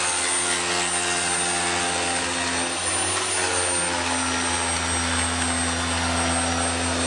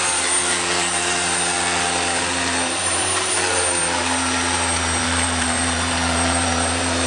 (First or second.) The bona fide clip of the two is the first